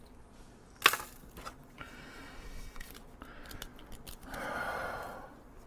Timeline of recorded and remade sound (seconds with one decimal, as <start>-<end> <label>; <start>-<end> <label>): 0.0-1.8 recorded; 1.8-2.9 remade; 2.9-5.7 recorded